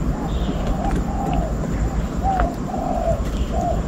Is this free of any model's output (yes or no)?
yes